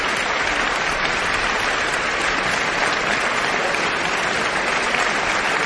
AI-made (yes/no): no